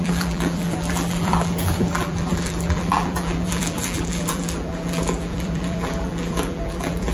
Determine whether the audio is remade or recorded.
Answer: remade